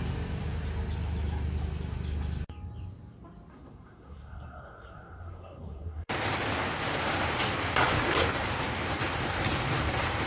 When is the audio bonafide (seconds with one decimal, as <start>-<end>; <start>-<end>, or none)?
0.0-3.5; 6.1-10.3